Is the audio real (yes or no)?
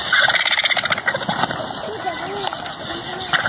yes